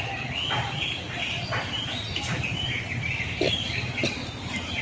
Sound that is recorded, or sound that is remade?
recorded